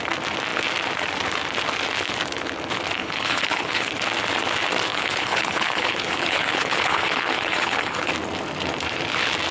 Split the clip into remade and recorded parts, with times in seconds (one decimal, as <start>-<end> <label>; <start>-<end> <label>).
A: 0.0-3.0 recorded; 3.0-3.9 remade; 3.9-4.9 recorded; 4.9-8.1 remade; 8.1-9.5 recorded